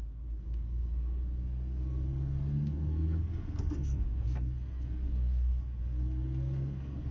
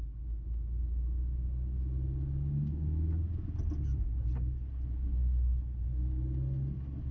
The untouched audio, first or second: second